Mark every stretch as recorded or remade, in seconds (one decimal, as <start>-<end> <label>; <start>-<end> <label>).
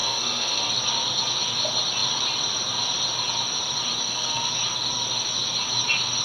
0.0-0.7 remade; 0.7-4.0 recorded; 4.0-4.5 remade; 4.5-6.2 recorded